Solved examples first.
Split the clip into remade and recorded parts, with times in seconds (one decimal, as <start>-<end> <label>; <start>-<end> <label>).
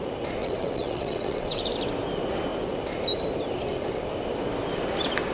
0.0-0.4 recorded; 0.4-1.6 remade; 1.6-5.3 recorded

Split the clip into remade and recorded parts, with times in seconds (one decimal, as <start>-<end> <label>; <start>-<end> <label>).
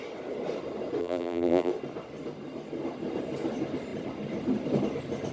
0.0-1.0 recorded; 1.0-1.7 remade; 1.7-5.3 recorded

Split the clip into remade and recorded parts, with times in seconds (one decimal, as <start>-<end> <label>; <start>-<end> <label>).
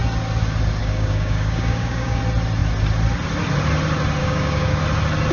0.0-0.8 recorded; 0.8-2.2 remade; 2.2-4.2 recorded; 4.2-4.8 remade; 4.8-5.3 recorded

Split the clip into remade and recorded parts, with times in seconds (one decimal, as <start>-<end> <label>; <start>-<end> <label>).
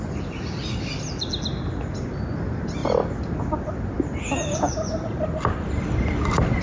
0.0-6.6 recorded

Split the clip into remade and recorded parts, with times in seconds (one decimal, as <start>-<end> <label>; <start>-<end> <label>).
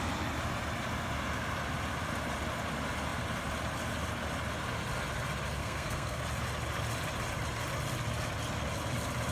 0.0-5.6 recorded; 5.6-6.2 remade; 6.2-9.3 recorded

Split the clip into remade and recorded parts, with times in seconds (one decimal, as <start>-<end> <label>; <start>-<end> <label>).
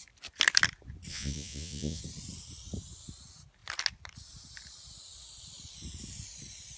0.0-1.1 recorded; 1.1-2.0 remade; 2.0-6.8 recorded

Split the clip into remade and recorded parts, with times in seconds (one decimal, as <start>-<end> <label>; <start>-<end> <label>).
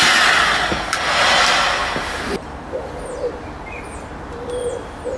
0.0-5.2 recorded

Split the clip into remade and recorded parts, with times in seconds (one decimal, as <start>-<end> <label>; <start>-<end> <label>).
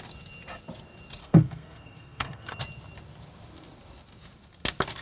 0.0-1.2 recorded; 1.2-2.6 remade; 2.6-5.0 recorded